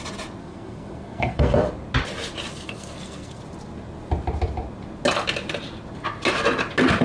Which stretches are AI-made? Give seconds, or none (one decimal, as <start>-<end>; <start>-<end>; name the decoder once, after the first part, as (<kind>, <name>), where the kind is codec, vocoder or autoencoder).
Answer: 0.4-1.7 (codec, SNAC); 2.5-3.4